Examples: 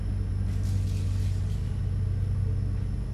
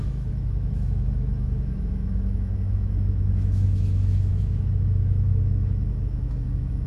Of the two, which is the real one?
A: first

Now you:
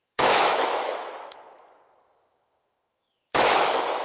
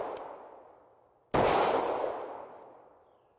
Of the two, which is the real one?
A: second